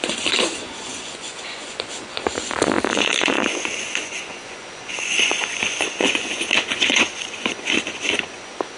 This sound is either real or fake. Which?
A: fake